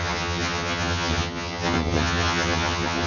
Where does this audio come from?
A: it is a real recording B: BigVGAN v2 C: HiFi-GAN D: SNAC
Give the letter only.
C